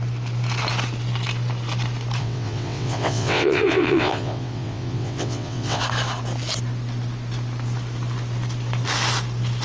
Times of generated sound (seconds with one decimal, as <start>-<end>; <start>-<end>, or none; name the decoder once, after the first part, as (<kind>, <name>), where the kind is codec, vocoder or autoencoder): 2.2-5.8 (vocoder, WaveNeXt)